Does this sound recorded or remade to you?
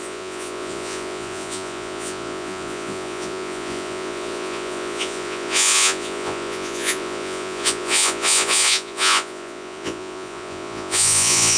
remade